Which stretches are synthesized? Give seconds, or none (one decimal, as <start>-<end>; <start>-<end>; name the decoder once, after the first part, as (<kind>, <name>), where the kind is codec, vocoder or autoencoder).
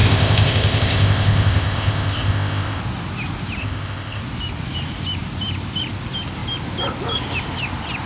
0.0-2.8 (codec, ZipCodec); 3.6-4.2